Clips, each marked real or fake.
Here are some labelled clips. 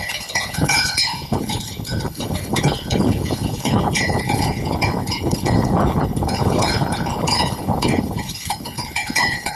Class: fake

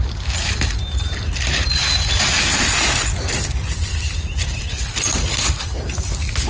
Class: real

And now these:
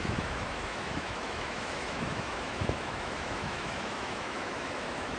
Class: fake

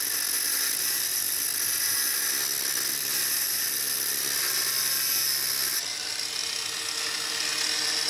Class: real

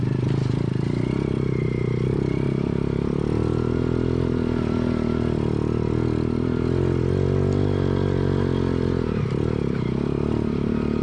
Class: fake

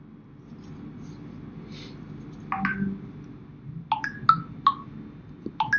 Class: real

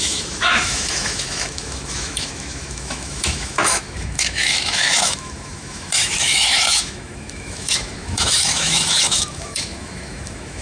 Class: fake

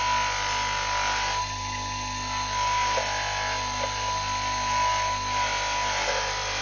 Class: real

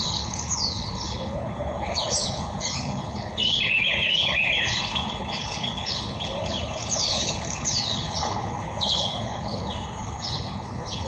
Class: fake